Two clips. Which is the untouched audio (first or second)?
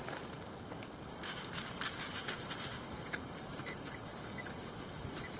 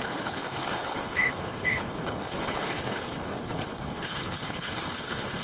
first